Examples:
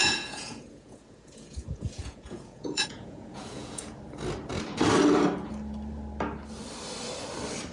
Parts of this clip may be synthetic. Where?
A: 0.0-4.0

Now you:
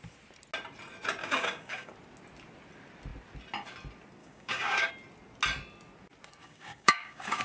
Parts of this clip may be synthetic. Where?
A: 1.2-1.9; 4.2-4.9; 6.4-7.4